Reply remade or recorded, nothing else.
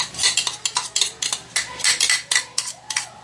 recorded